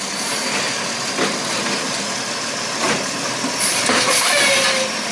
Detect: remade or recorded recorded